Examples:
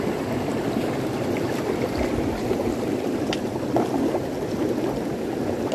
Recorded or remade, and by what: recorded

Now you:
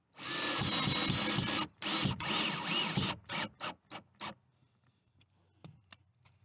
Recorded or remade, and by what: recorded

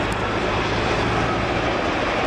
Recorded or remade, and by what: recorded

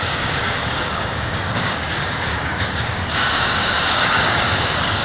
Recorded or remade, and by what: remade, codec, DAC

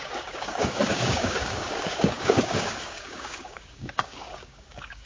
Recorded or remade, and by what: remade, codec, DAC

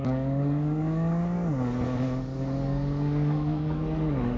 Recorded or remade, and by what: remade, codec, DAC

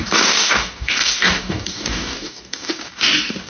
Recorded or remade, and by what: remade, codec, DAC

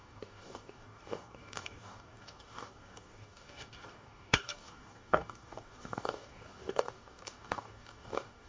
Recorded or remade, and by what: remade, codec, DAC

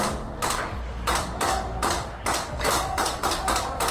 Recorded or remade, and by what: remade, codec, DAC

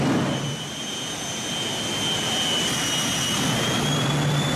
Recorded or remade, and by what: recorded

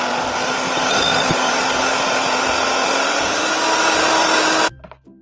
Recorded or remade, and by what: recorded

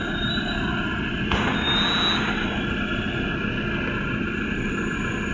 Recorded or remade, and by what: recorded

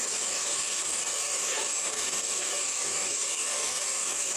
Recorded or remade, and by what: remade, codec, DAC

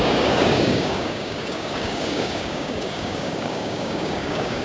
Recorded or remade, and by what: remade, codec, DAC